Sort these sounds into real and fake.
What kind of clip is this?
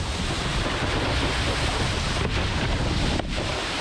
fake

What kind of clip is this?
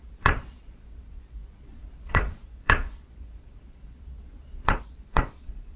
fake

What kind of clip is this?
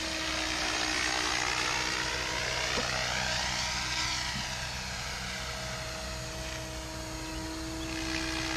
real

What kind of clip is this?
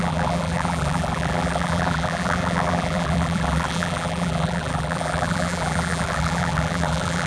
fake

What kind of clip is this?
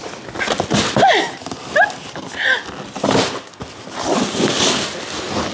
real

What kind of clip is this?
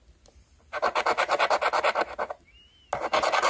real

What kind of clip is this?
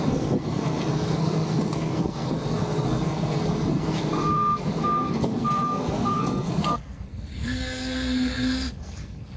fake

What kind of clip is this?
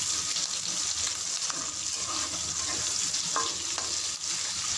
real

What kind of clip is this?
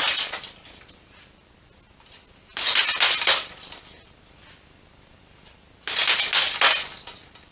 real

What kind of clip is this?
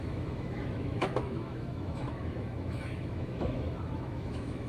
fake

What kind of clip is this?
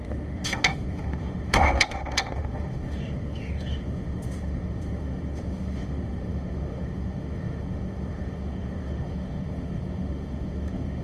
fake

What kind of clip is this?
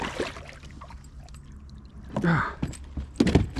real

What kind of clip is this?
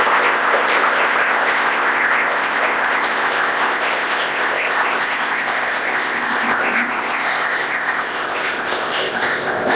fake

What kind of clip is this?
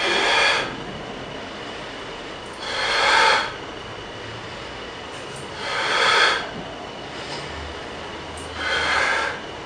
real